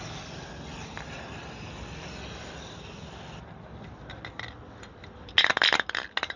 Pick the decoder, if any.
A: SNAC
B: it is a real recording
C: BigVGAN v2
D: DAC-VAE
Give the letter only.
B